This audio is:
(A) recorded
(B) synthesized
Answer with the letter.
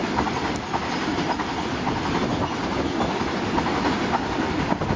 A